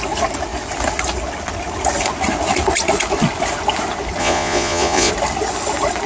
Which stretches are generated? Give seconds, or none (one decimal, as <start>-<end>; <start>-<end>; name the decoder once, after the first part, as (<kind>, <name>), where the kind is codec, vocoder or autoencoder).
4.2-5.1 (vocoder, Vocos)